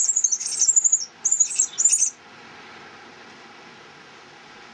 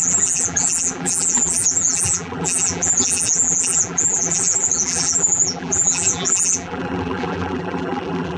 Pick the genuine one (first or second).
first